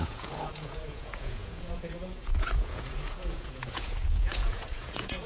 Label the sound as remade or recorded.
remade